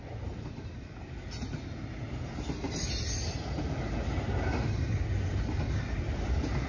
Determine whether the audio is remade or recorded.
recorded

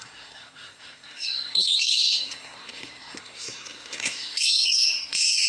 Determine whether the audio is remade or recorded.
remade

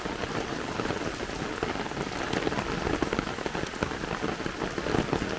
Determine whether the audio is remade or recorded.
recorded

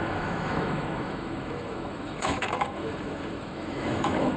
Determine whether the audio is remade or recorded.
remade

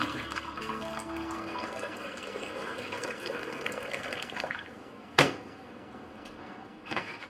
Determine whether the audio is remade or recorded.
remade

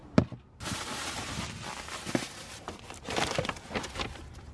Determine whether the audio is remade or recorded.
recorded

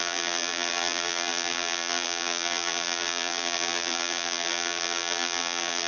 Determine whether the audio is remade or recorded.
remade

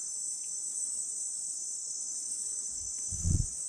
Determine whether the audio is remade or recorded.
remade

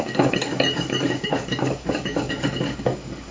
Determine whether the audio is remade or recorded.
remade